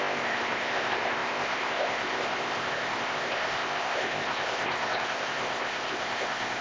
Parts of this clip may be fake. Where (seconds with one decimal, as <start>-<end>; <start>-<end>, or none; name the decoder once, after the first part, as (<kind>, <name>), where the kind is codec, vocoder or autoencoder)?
0.0-6.6 (codec, ZipCodec)